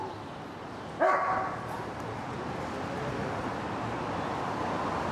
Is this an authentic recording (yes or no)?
yes